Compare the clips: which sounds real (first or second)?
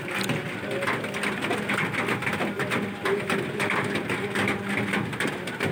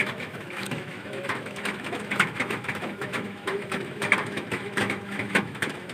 first